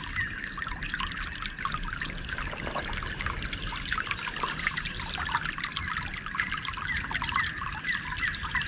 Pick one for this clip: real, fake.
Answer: real